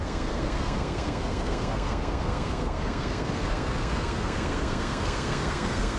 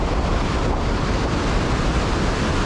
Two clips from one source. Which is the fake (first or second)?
first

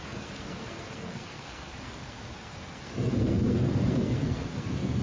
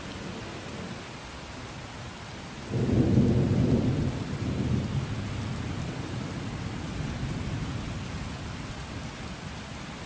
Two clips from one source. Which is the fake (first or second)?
first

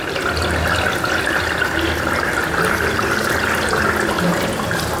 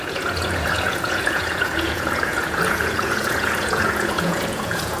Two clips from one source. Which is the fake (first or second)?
second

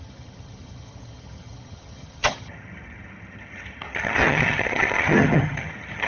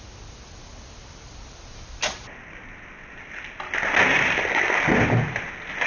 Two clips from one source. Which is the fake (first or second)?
first